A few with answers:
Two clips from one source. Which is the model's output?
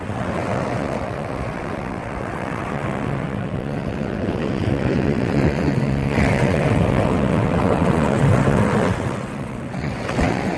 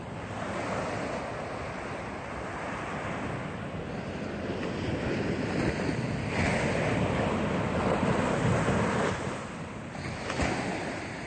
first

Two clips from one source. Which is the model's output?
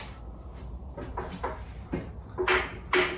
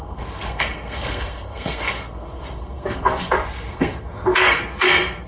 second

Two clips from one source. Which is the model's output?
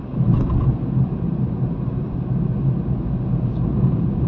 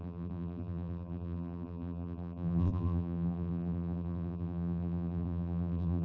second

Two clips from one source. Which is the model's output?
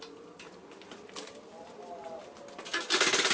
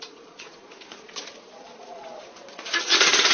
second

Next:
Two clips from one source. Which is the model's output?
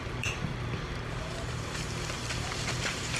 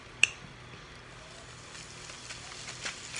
first